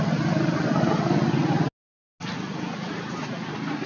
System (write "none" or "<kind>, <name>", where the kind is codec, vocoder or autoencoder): none